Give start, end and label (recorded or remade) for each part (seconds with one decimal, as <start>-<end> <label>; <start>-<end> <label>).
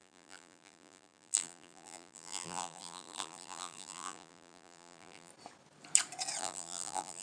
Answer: 0.0-5.3 remade; 5.3-6.4 recorded; 6.4-7.2 remade